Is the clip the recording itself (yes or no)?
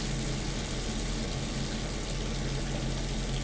yes